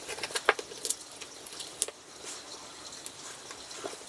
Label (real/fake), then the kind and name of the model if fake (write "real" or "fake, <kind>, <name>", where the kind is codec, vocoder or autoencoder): real